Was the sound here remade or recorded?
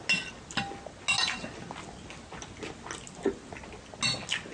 recorded